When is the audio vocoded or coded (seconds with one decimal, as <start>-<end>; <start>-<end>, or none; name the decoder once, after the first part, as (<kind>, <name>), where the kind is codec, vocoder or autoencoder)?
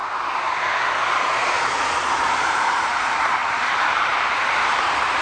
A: 2.1-5.2 (vocoder, BigVGAN v2)